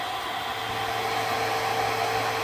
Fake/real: real